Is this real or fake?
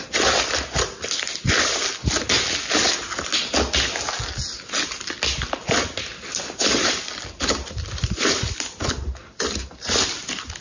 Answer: real